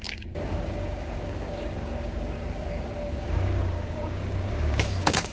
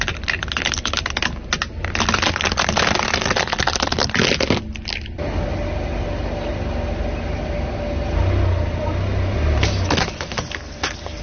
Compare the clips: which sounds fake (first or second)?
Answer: first